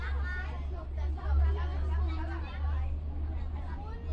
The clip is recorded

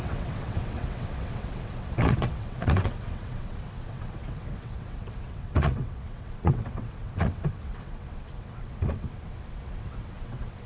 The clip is remade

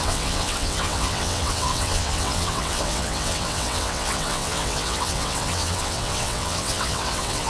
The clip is remade